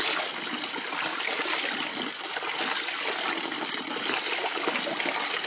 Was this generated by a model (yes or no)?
no